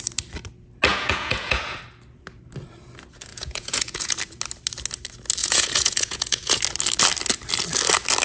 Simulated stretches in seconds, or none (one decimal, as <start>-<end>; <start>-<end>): 0.9-1.8; 3.3-4.2; 5.4-6.6